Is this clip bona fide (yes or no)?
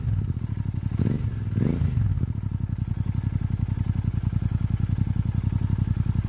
yes